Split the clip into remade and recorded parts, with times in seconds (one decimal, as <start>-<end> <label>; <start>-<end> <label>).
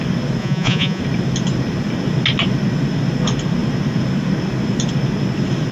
0.0-0.4 recorded; 0.4-1.0 remade; 1.0-5.7 recorded